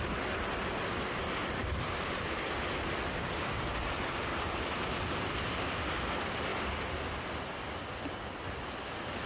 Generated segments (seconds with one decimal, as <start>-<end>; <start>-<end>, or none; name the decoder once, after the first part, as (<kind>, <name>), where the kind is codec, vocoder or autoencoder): none